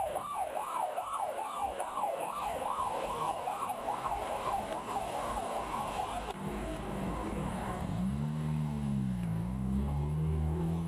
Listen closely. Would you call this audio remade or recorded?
remade